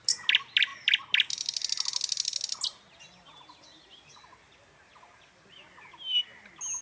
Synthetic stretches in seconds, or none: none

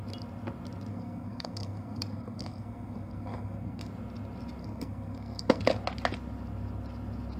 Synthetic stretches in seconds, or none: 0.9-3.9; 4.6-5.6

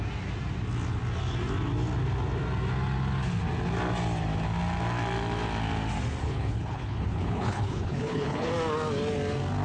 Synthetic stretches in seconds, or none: 6.2-8.5

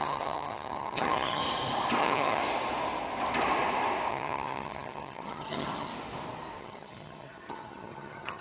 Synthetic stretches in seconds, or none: 0.0-1.4; 2.0-2.4; 4.1-5.9; 6.6-8.4

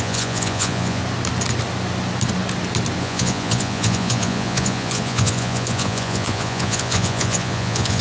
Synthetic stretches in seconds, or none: 0.0-1.0; 3.0-8.0

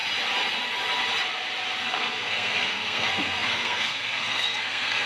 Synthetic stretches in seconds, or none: 1.8-5.1

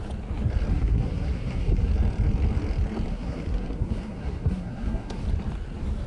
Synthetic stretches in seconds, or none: 0.7-1.9; 3.1-5.2

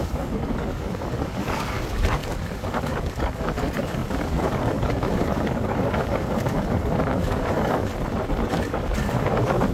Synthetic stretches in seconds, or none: 0.0-7.9; 8.5-9.7